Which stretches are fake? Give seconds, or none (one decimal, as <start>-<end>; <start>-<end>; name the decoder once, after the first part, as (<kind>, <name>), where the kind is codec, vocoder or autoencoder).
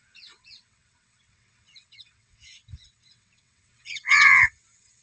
0.0-5.0 (vocoder, WaveNeXt)